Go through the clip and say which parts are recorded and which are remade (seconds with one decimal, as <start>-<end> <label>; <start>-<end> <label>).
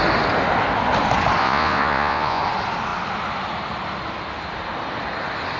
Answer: 0.0-1.4 recorded; 1.4-2.4 remade; 2.4-5.6 recorded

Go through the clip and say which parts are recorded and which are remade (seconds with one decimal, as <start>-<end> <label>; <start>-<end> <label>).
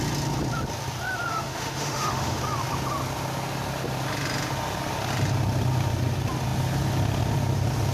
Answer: 0.0-1.3 recorded; 1.3-2.4 remade; 2.4-7.9 recorded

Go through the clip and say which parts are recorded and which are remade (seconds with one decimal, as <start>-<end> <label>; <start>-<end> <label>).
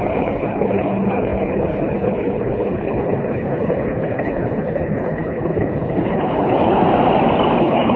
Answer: 0.0-6.8 remade; 6.8-7.6 recorded; 7.6-8.0 remade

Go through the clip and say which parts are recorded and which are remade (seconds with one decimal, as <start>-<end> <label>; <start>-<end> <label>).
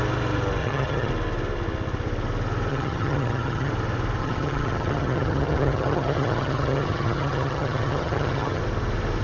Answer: 0.0-0.6 recorded; 0.6-1.1 remade; 1.1-2.7 recorded; 2.7-3.7 remade; 3.7-4.2 recorded; 4.2-8.6 remade; 8.6-9.2 recorded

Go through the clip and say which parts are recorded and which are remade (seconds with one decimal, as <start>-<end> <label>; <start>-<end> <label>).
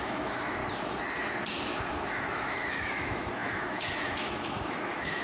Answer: 0.0-0.6 remade; 0.6-1.9 recorded; 1.9-5.2 remade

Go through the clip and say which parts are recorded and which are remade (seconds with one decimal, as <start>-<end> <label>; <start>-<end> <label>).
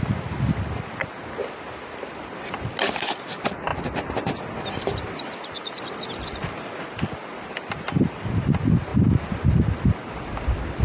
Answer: 0.0-10.8 recorded